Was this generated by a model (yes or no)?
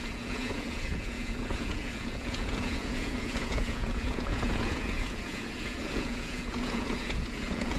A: yes